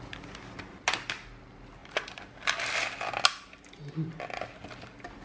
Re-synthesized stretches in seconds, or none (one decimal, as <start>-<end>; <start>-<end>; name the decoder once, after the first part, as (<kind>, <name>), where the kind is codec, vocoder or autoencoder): none